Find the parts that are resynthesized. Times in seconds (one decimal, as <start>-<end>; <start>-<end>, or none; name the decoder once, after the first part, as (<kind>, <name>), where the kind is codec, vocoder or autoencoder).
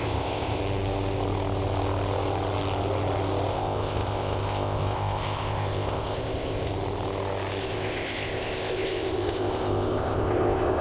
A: 0.0-0.6 (codec, ZipCodec); 3.5-6.7; 7.6-10.8